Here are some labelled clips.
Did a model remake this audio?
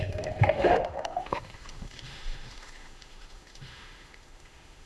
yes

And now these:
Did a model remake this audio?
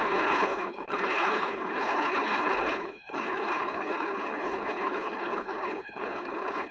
yes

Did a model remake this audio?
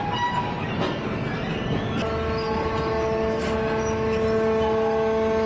no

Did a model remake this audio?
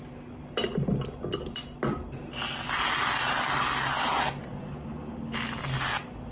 no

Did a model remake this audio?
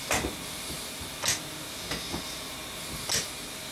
no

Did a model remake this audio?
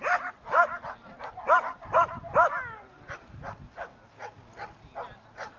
no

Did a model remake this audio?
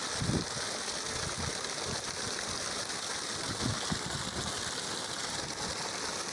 no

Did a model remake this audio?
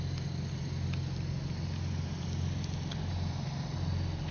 no